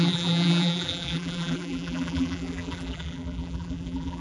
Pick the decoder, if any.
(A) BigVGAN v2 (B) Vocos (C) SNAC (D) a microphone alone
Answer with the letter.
A